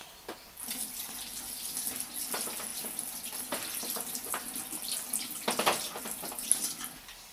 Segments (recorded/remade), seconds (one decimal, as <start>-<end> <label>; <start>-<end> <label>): 0.0-7.3 recorded